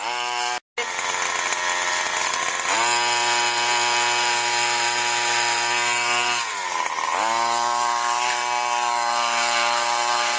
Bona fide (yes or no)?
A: yes